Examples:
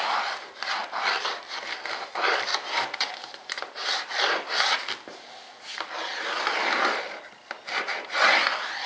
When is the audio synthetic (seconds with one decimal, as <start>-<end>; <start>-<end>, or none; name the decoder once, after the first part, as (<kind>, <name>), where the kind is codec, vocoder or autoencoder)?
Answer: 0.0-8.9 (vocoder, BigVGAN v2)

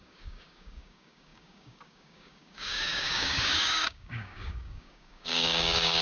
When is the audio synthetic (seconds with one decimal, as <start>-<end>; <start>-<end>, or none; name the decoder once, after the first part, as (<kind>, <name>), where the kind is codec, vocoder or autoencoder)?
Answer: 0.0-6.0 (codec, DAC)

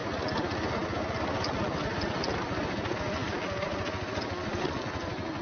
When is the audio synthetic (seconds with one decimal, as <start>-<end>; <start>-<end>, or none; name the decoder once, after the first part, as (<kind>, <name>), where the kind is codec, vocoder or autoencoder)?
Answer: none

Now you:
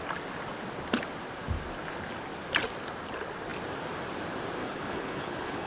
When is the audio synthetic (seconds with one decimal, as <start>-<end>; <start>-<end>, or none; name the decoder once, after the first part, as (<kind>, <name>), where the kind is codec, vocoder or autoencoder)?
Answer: 4.6-5.7 (codec, HILCodec)